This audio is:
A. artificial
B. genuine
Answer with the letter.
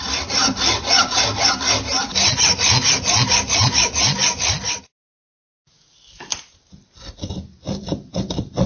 B